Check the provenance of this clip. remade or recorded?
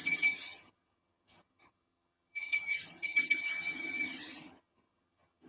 remade